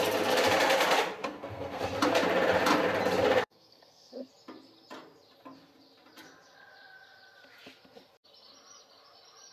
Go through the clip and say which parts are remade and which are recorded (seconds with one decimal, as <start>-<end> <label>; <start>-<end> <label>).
0.0-1.2 recorded; 1.2-1.8 remade; 1.8-3.3 recorded; 3.3-4.3 remade; 4.3-9.5 recorded